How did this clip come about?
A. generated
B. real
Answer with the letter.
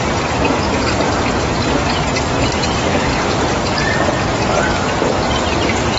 B